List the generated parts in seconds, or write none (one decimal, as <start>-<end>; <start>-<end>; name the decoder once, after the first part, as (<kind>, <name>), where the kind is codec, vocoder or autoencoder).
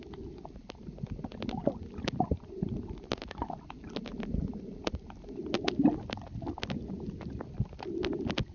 none